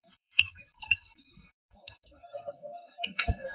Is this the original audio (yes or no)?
no